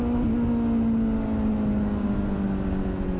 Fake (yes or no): no